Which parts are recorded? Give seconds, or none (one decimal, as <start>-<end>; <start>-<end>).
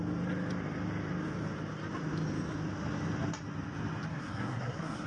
0.0-4.1